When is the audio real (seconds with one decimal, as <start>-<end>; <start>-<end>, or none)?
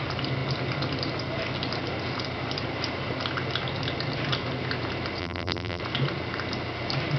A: 0.0-5.2; 5.8-7.2